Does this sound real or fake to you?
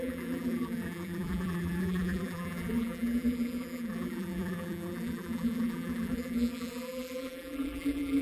fake